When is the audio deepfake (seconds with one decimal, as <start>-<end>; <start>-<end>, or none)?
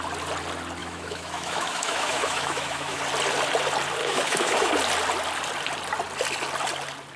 0.8-3.0; 4.0-4.7